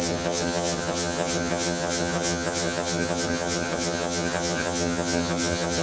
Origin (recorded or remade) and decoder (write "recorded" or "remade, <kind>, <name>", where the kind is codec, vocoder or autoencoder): remade, vocoder, HiFi-GAN